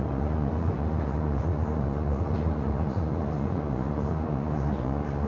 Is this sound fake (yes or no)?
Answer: yes